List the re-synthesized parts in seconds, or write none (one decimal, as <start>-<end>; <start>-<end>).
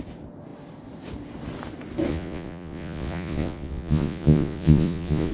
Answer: 2.1-5.3